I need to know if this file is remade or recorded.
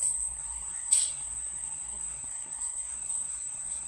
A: remade